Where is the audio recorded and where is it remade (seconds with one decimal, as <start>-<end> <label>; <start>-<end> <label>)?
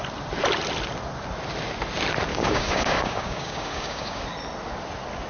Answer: 0.0-2.3 recorded; 2.3-4.2 remade; 4.2-5.3 recorded